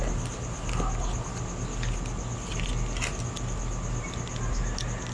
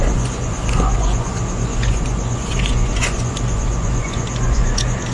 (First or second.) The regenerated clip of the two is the second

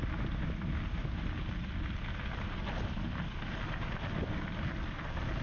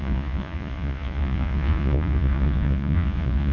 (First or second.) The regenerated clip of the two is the second